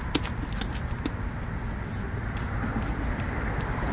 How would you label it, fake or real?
real